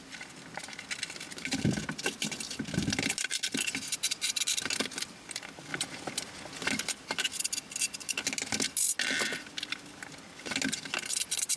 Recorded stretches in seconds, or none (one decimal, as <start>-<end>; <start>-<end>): 0.0-11.6